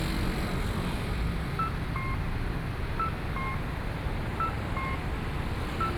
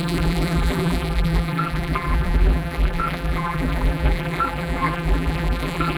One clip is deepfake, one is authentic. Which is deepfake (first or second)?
second